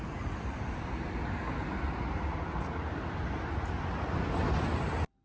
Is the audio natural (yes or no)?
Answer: yes